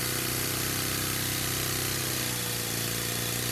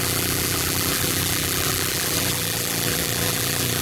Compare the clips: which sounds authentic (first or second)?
first